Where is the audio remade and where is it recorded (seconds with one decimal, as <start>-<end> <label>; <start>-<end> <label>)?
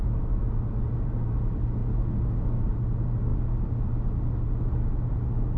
0.0-5.6 recorded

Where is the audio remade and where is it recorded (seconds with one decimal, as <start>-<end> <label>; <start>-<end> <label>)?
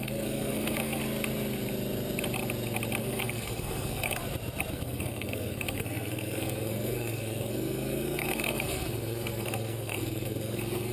0.0-1.0 remade; 1.0-3.0 recorded; 3.0-4.2 remade; 4.2-4.7 recorded; 4.7-10.9 remade